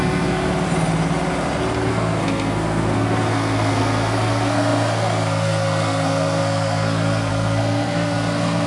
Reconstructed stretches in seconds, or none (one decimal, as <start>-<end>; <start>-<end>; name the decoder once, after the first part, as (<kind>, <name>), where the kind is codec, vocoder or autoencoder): 0.0-0.5 (codec, SNAC); 1.9-8.7